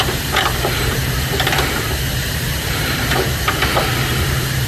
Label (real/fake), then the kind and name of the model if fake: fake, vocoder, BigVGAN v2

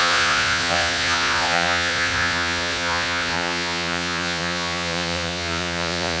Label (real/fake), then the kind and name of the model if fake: fake, vocoder, Vocos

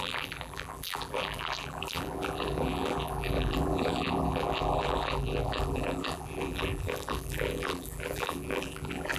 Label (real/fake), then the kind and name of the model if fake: fake, vocoder, BigVGAN v2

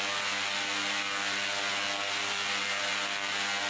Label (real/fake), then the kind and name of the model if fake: real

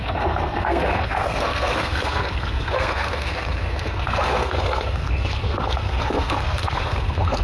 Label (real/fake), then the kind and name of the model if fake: fake, codec, SNAC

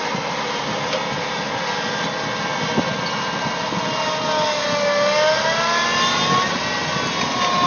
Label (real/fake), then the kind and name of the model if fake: real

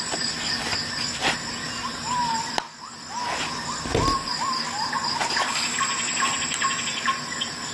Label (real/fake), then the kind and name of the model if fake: real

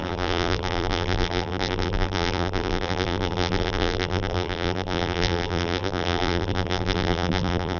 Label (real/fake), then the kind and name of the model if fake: fake, vocoder, BigVGAN v2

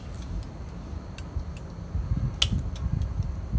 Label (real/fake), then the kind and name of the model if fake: real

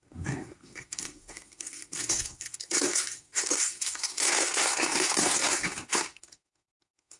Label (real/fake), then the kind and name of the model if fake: fake, codec, SNAC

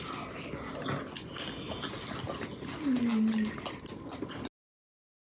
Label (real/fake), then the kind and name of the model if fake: real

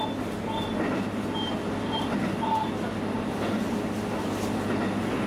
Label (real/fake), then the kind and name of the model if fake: real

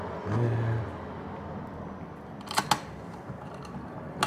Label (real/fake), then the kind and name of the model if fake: real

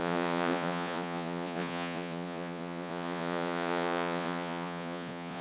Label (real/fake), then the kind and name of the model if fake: fake, vocoder, Vocos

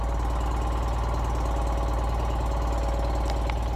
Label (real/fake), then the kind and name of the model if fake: real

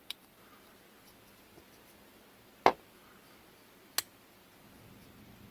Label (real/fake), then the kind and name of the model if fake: real